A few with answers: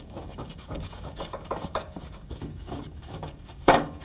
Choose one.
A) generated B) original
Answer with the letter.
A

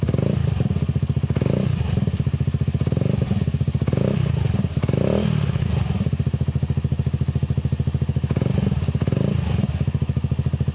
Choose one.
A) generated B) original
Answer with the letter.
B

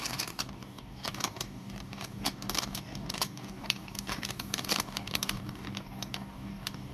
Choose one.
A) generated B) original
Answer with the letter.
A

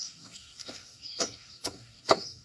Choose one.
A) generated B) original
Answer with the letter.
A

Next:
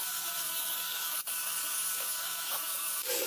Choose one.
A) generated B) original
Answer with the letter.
A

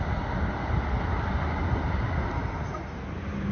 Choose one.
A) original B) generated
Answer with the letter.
A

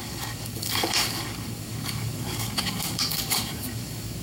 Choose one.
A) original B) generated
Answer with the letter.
B